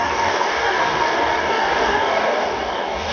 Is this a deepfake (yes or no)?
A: yes